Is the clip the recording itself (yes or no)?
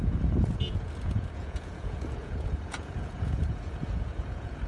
no